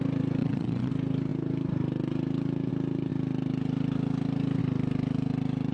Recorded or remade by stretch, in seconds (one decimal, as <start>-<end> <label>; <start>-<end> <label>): 0.0-0.4 recorded; 0.4-0.9 remade; 0.9-5.7 recorded